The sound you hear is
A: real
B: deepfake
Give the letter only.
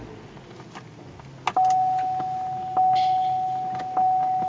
A